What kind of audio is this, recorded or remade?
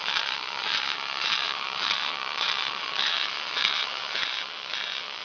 remade